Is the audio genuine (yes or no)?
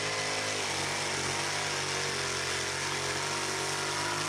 yes